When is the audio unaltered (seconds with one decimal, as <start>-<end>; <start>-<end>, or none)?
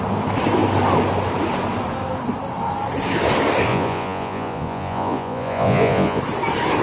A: 0.0-3.7; 6.2-6.8